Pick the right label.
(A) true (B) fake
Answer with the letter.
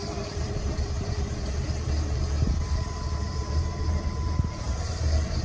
B